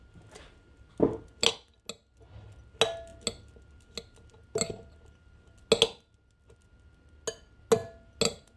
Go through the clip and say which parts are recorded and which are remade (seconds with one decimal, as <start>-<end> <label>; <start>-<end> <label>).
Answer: 0.0-8.6 recorded